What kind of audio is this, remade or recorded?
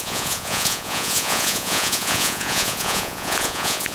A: remade